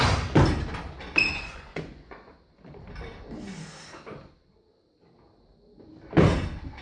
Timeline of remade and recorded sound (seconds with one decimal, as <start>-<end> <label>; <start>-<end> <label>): 0.0-1.3 recorded; 1.3-2.3 remade; 2.3-6.8 recorded